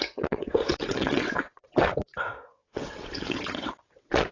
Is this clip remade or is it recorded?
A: remade